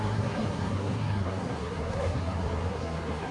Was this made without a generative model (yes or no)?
no